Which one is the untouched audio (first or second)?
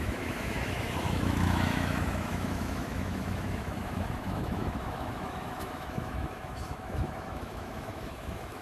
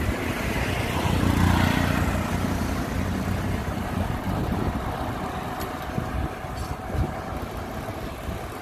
second